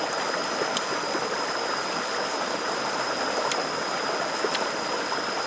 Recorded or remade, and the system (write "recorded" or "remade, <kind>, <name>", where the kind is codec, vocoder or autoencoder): recorded